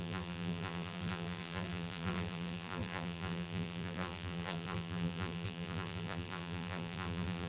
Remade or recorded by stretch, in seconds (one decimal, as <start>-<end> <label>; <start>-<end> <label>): 0.0-7.5 remade